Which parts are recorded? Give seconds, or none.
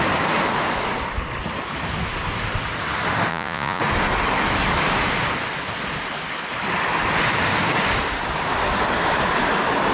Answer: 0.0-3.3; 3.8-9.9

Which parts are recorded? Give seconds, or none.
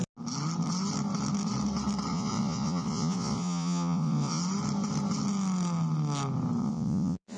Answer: 0.0-2.1; 4.4-6.6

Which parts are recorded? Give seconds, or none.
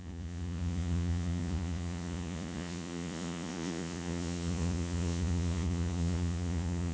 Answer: none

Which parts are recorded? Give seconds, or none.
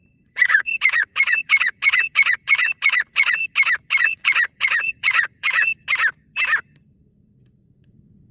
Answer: 3.4-4.0; 5.7-6.9